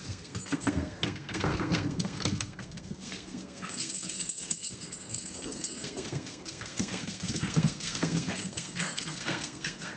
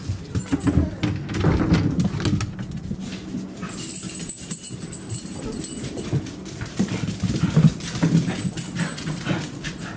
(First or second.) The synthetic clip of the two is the first